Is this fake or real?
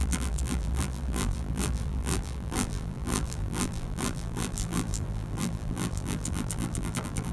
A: fake